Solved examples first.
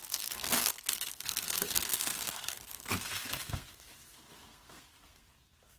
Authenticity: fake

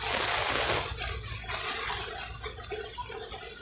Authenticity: real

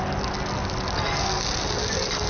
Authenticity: real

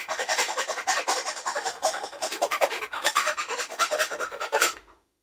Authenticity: fake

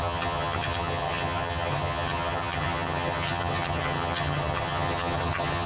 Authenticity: fake